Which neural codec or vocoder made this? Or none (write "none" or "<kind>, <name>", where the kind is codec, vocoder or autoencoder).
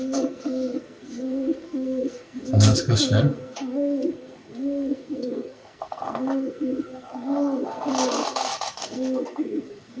codec, SNAC